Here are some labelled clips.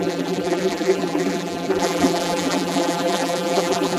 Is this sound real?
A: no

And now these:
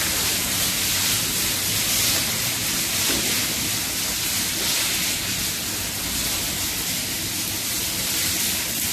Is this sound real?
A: yes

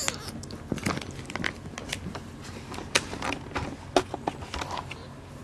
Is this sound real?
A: yes